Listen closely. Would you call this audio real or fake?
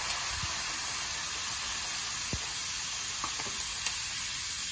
real